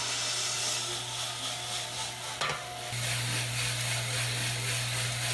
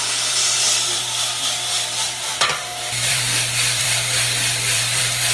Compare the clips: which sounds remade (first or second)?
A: second